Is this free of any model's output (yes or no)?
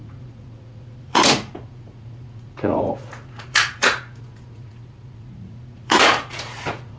no